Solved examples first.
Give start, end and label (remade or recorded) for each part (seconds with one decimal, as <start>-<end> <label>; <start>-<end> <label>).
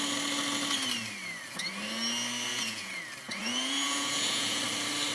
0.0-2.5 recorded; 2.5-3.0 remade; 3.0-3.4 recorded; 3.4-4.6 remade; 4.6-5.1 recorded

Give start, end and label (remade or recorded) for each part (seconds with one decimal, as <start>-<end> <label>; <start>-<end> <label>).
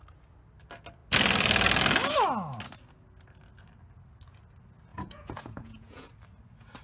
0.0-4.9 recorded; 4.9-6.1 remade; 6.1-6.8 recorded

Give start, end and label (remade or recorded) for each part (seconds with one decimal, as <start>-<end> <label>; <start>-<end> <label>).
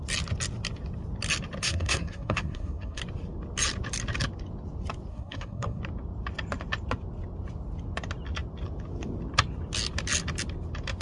0.0-1.6 recorded; 1.6-3.0 remade; 3.0-5.1 recorded; 5.1-5.8 remade; 5.8-11.0 recorded